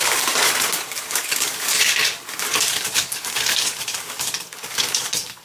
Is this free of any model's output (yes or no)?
no